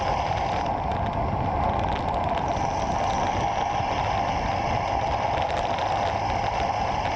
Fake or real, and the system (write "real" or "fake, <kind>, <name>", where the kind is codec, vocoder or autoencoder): real